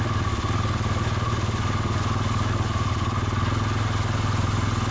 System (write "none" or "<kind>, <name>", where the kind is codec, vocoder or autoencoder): none